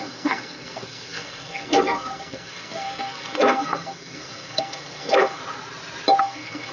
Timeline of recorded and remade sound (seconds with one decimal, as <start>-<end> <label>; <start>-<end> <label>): 0.0-5.4 remade; 5.4-6.2 recorded; 6.2-6.7 remade